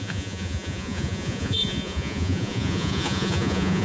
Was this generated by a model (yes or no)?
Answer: yes